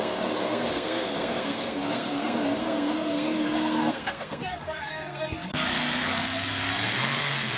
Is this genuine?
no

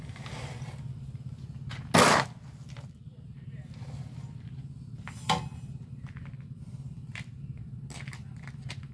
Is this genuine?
yes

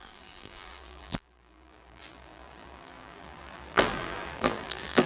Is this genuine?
no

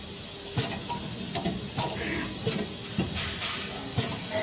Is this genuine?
yes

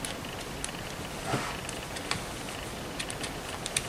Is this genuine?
yes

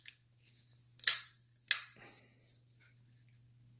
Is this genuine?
yes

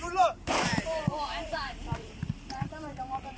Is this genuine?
no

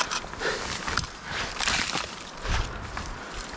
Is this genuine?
no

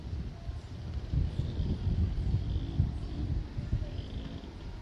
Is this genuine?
yes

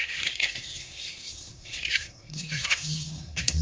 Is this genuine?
no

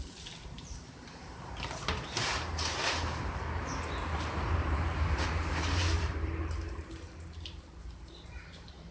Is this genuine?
no